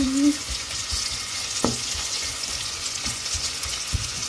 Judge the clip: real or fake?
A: fake